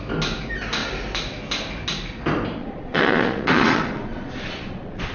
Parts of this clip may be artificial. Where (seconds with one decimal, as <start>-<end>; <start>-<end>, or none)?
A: 2.6-5.1